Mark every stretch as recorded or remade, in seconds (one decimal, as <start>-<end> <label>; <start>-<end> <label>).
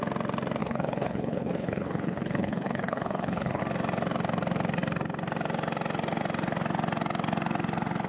0.0-0.6 recorded; 0.6-3.6 remade; 3.6-8.1 recorded